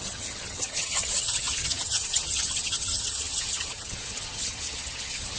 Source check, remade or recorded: remade